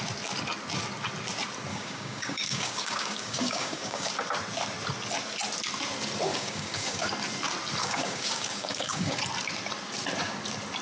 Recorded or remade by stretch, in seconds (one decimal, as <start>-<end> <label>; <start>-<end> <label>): 0.0-1.7 recorded; 1.7-4.1 remade; 4.1-6.3 recorded; 6.3-7.1 remade; 7.1-7.8 recorded; 7.8-9.2 remade; 9.2-10.8 recorded

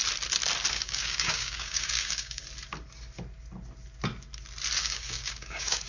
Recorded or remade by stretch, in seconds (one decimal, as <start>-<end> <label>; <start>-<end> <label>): 0.0-0.7 recorded; 0.7-2.4 remade; 2.4-4.8 recorded; 4.8-5.9 remade

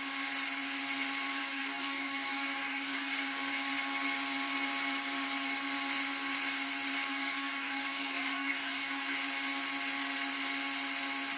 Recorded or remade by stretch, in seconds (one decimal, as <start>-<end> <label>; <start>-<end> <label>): 0.0-1.4 recorded; 1.4-3.4 remade; 3.4-7.1 recorded; 7.1-9.2 remade; 9.2-11.4 recorded